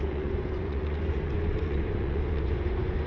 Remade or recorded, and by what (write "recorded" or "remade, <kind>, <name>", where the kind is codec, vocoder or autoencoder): remade, vocoder, Vocos